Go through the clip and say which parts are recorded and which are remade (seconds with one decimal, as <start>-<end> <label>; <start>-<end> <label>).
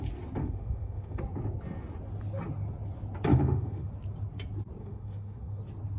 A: 0.0-0.4 recorded; 0.4-1.2 remade; 1.2-3.3 recorded; 3.3-3.9 remade; 3.9-4.8 recorded; 4.8-5.6 remade; 5.6-6.0 recorded